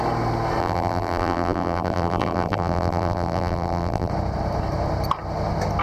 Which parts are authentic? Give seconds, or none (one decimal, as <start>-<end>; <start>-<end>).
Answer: 0.0-0.6; 4.1-5.8